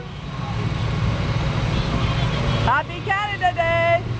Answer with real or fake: real